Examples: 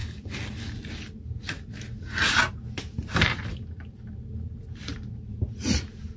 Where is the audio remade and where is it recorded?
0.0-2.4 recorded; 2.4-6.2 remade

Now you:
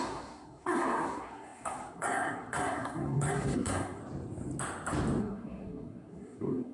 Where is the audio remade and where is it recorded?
0.0-4.0 remade; 4.0-5.2 recorded; 5.2-6.7 remade

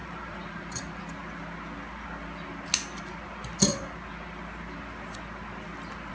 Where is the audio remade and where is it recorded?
0.0-1.0 remade; 1.0-6.1 recorded

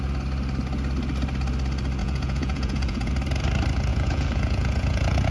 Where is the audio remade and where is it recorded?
0.0-2.0 recorded; 2.0-3.1 remade; 3.1-3.9 recorded; 3.9-5.3 remade

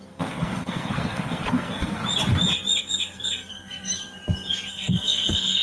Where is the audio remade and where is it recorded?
0.0-2.0 remade; 2.0-2.8 recorded; 2.8-3.9 remade; 3.9-4.7 recorded; 4.7-5.6 remade

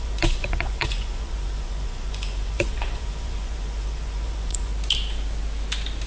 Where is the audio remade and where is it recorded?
0.0-4.7 remade; 4.7-6.1 recorded

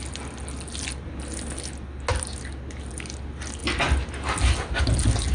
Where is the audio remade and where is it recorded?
0.0-5.3 recorded

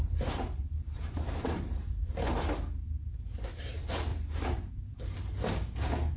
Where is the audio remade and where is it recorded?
0.0-2.3 remade; 2.3-4.1 recorded; 4.1-4.7 remade; 4.7-6.2 recorded